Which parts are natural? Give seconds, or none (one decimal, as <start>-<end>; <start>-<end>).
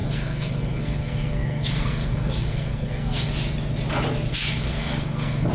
3.3-4.3